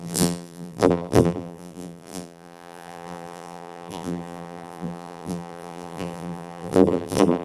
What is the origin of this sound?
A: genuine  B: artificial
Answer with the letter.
B